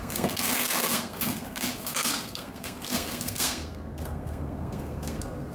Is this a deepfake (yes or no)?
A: yes